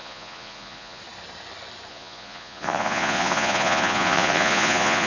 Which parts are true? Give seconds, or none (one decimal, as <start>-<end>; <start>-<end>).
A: 1.0-1.9